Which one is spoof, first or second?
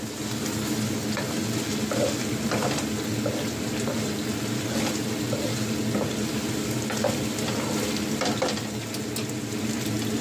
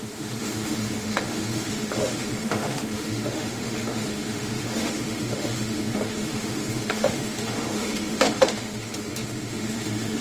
second